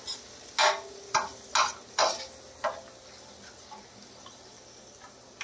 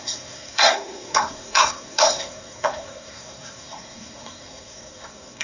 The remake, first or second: second